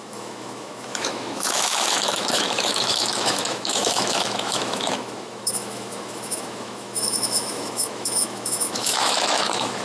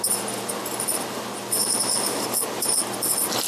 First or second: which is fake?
first